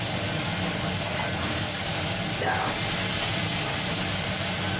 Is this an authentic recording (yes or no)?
yes